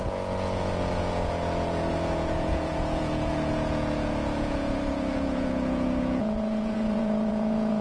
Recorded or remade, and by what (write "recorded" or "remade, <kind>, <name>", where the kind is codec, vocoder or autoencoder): remade, vocoder, Vocos